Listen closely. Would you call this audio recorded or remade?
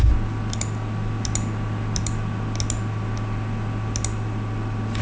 recorded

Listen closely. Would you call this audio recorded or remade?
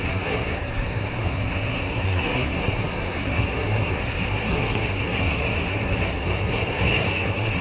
remade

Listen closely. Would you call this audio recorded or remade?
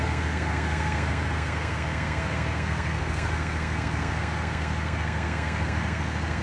remade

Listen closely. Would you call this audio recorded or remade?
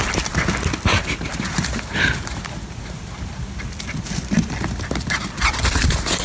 recorded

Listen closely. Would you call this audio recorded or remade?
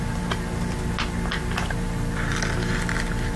recorded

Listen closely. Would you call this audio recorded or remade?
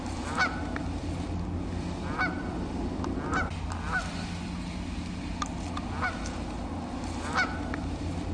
recorded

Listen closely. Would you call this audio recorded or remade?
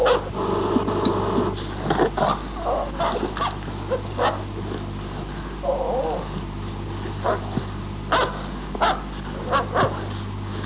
recorded